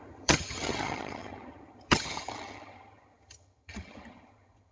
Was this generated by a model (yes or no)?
yes